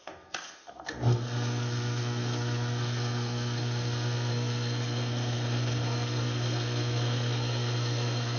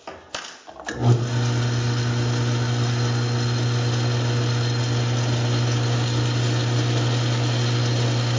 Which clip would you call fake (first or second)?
first